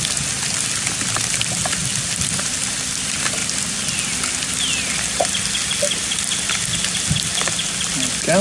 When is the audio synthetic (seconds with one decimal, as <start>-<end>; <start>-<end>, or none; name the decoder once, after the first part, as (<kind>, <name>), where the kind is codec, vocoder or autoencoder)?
none

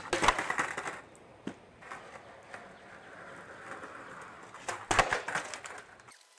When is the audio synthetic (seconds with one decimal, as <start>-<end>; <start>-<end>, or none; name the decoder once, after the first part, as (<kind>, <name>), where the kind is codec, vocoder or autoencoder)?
none

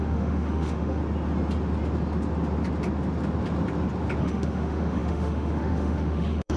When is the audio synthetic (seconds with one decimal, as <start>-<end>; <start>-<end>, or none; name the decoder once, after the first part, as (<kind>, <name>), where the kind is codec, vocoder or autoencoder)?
0.0-1.0 (autoencoder, DAC-VAE); 4.2-6.6

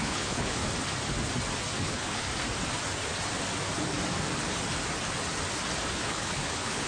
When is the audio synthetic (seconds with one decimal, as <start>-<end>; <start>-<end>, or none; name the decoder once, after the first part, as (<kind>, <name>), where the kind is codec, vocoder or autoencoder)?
0.0-0.6 (codec, HILCodec); 1.9-2.3; 5.9-6.9

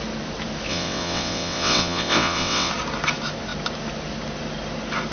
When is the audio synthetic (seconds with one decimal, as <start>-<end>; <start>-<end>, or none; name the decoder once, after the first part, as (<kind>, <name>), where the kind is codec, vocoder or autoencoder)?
0.7-2.7 (vocoder, WaveNeXt)

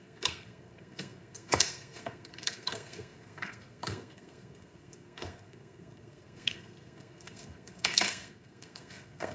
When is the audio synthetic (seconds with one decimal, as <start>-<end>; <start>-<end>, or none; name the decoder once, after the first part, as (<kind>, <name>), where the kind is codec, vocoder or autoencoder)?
0.0-9.3 (codec, SNAC)

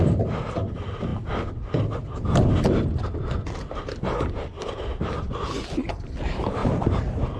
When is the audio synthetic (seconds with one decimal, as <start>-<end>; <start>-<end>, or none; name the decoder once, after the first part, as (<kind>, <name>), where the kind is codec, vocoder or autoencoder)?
0.0-1.1 (vocoder, BigVGAN v2); 5.0-7.4